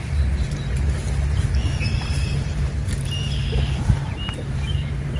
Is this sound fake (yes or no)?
yes